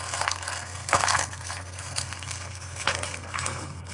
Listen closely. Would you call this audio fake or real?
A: fake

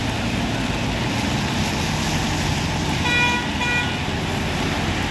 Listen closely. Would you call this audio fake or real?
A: real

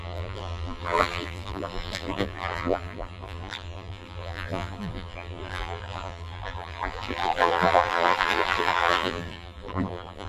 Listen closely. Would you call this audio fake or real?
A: fake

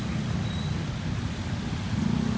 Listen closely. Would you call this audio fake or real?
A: real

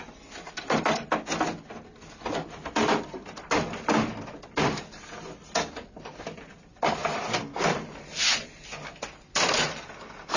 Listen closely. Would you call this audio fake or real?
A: real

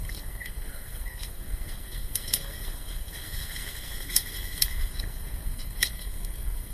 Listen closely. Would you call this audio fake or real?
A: fake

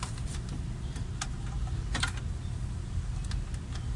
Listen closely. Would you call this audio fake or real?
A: real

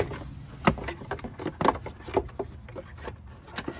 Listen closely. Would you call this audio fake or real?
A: real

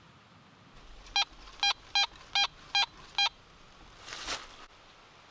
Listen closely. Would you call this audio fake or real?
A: real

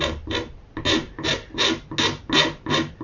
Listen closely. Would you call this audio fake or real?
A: real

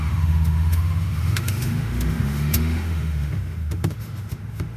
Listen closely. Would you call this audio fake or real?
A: fake